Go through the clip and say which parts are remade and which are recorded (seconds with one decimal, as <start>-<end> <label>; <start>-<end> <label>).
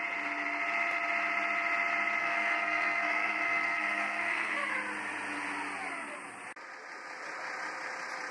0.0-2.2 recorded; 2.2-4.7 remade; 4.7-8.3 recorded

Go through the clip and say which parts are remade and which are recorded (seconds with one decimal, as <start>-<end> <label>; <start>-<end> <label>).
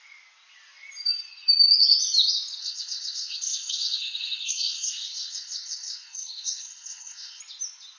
0.0-2.6 recorded; 2.6-7.4 remade; 7.4-8.0 recorded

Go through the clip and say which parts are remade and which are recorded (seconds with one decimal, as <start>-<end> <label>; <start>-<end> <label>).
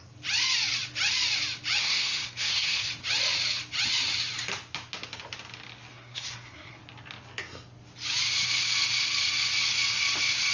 0.0-1.8 recorded; 1.8-2.9 remade; 2.9-5.9 recorded; 5.9-6.8 remade; 6.8-10.5 recorded